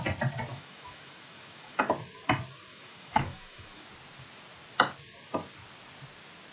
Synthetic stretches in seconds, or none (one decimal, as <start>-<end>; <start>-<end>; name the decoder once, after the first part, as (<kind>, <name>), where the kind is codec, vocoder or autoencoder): 0.5-1.8 (autoencoder, DAC-VAE); 2.7-3.8